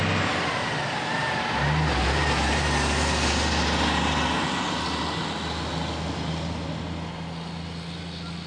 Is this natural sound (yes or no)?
yes